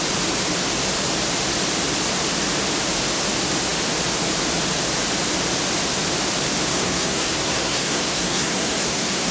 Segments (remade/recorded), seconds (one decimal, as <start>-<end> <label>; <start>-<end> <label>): 0.0-6.7 recorded; 6.7-9.3 remade